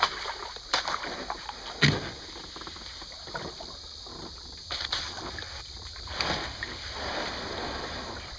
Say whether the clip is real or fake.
real